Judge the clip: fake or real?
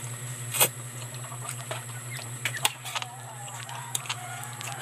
fake